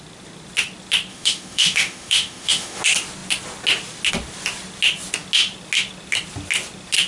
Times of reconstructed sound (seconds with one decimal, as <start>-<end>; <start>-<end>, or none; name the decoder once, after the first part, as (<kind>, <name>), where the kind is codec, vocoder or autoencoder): 1.1-2.8 (autoencoder, DAC-VAE)